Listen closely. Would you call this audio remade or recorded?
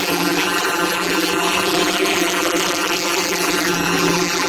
remade